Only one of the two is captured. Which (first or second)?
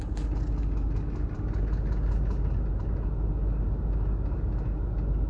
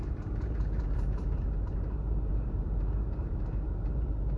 first